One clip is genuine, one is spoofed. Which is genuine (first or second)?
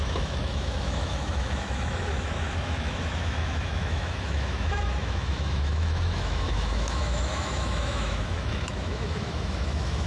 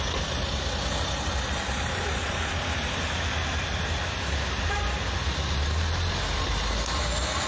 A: second